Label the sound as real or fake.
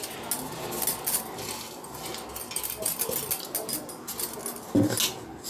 real